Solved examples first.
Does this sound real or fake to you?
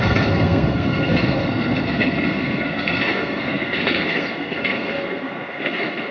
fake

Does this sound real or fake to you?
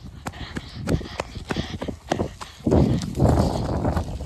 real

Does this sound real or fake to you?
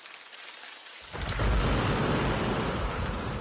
real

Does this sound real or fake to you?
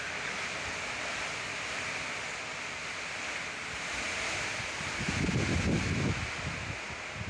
real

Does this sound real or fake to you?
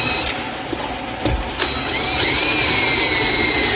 real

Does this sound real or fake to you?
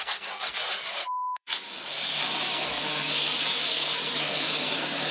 fake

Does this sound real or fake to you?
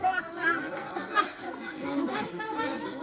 fake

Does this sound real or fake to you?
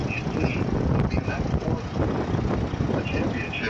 real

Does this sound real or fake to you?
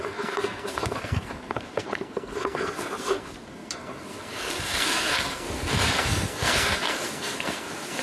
fake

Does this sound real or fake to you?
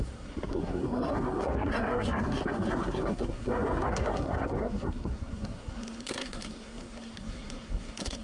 fake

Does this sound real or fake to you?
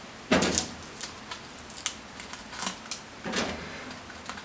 real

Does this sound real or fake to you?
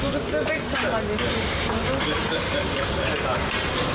real